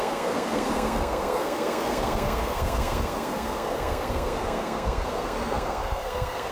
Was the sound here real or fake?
fake